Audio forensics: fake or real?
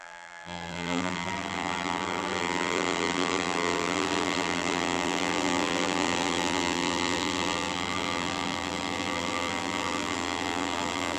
fake